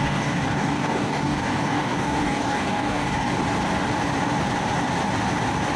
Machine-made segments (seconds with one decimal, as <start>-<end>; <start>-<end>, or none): 0.0-3.4